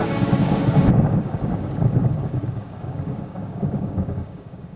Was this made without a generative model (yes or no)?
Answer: no